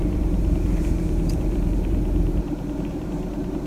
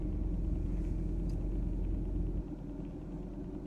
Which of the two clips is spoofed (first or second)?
first